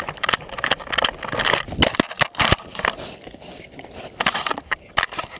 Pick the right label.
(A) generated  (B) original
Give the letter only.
B